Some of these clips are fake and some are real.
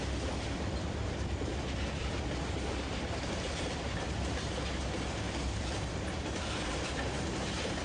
real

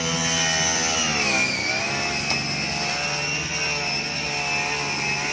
real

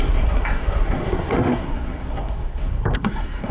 fake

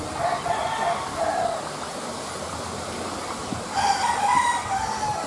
real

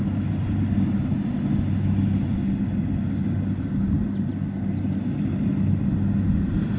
real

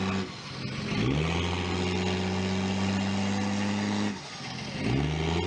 real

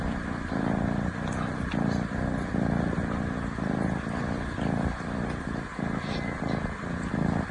real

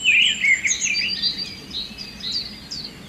real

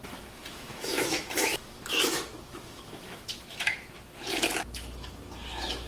fake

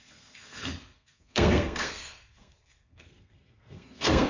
fake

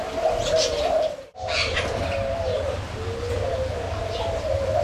real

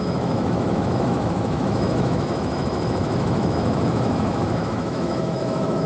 fake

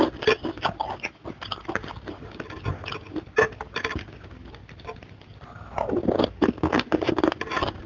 real